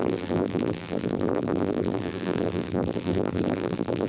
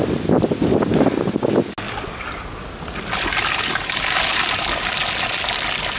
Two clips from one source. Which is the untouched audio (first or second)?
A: second